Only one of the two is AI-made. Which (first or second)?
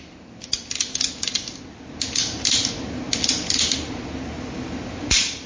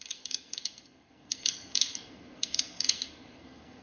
second